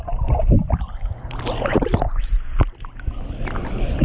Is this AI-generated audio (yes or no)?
no